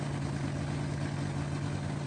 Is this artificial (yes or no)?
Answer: no